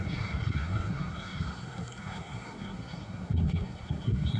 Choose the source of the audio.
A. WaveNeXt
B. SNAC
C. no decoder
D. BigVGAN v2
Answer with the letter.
B